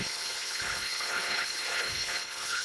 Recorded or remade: remade